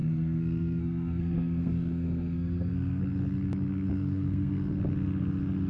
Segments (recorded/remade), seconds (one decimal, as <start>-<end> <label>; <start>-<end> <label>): 0.0-3.0 remade; 3.0-3.9 recorded; 3.9-4.8 remade; 4.8-5.7 recorded